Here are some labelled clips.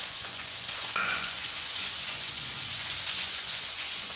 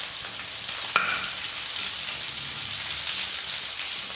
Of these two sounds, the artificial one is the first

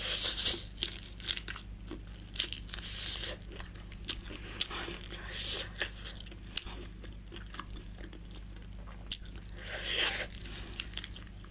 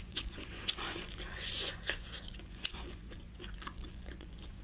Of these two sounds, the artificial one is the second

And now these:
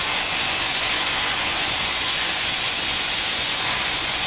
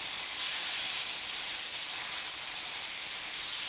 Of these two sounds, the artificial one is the first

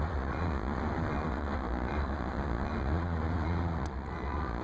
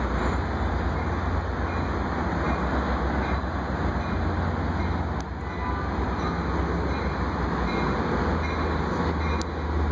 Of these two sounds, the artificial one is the first